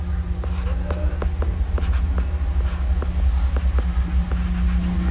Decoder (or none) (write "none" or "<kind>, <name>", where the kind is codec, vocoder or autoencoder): none